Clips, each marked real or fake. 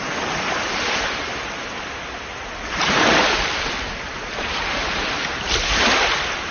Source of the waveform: real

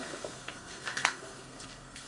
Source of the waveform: fake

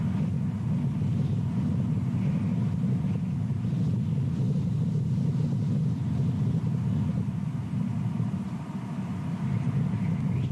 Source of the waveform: real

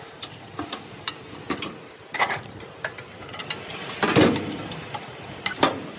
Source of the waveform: real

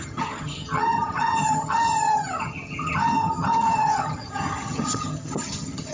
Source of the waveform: fake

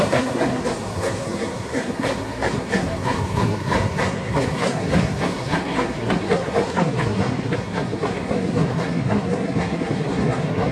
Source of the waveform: fake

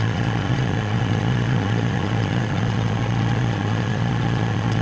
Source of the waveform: fake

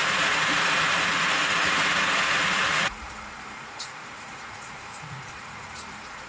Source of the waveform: fake